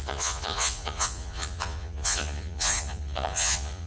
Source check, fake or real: fake